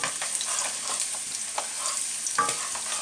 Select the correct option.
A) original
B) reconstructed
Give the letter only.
A